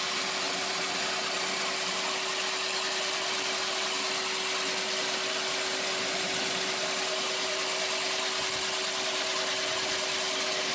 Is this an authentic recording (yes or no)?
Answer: yes